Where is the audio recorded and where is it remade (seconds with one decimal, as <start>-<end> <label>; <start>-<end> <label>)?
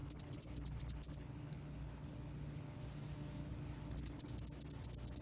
0.0-2.8 remade; 2.8-3.4 recorded; 3.4-4.3 remade; 4.3-5.2 recorded